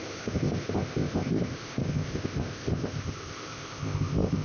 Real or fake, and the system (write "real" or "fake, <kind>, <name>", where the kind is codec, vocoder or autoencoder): fake, codec, ZipCodec